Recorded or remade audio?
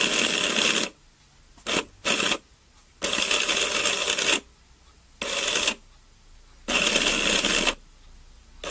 recorded